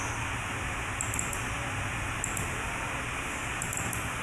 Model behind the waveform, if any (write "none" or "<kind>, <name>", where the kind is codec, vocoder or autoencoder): none